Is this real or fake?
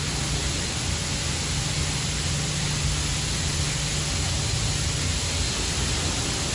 real